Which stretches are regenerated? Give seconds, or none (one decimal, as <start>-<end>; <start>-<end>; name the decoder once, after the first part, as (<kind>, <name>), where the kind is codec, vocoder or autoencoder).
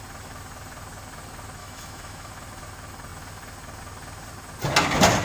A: 1.6-2.3 (autoencoder, DAC-VAE)